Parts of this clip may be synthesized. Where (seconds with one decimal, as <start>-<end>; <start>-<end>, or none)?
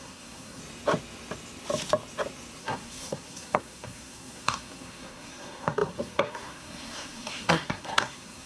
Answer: 0.0-0.6; 2.6-8.5